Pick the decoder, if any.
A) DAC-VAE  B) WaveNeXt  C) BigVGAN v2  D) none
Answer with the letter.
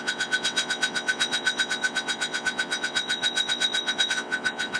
B